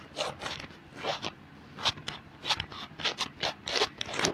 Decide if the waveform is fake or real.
real